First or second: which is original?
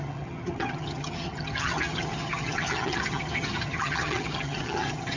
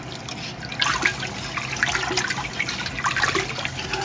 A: second